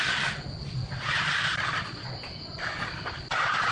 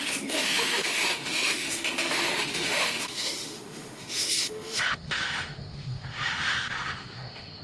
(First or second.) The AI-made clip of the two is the second